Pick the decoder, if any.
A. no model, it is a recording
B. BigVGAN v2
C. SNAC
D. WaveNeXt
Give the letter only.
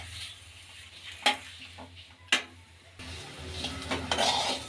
A